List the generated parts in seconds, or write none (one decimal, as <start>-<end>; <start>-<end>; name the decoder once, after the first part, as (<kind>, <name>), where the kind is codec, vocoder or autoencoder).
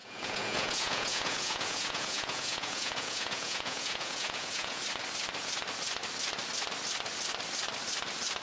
0.0-4.8 (vocoder, Vocos)